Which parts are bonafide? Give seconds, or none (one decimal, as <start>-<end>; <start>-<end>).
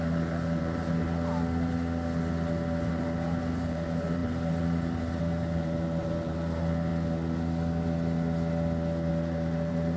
1.0-2.9; 6.9-9.1